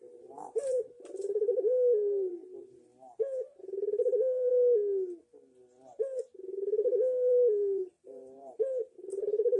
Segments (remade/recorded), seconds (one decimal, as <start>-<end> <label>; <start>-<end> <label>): 0.0-2.9 remade; 2.9-3.6 recorded; 3.6-4.5 remade; 4.5-7.3 recorded; 7.3-9.6 remade